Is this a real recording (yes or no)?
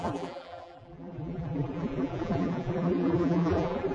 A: no